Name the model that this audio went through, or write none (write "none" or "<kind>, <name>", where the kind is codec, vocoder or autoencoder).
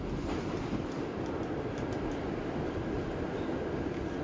none